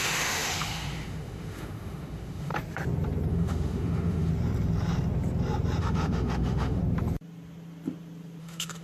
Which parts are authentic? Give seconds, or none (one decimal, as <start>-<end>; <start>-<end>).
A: 2.5-3.3; 4.3-5.8; 6.8-8.4